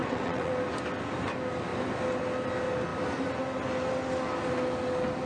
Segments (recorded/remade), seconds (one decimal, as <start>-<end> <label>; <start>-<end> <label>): 0.0-0.5 remade; 0.5-5.3 recorded